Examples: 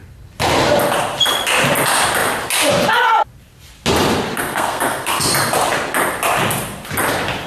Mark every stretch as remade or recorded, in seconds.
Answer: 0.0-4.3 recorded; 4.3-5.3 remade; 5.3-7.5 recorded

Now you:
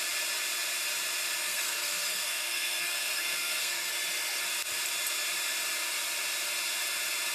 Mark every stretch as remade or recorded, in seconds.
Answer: 0.0-1.4 recorded; 1.4-3.9 remade; 3.9-7.3 recorded